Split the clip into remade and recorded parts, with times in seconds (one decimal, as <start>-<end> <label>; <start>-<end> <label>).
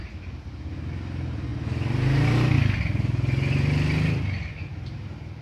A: 0.0-5.4 recorded